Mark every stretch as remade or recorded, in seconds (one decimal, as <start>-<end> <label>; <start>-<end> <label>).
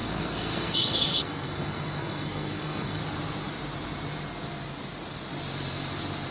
0.0-3.0 remade; 3.0-6.3 recorded